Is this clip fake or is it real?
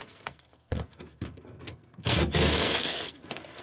fake